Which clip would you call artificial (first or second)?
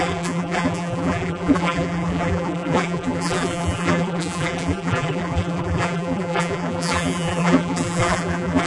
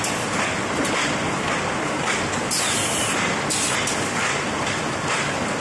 first